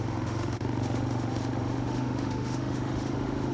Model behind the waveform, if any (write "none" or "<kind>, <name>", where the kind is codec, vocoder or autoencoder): autoencoder, DAC-VAE